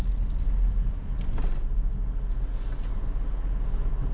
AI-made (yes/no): no